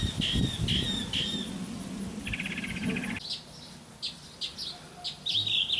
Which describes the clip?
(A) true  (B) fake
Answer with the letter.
A